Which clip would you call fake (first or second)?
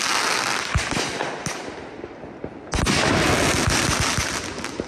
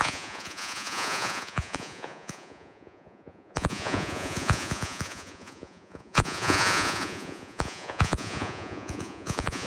second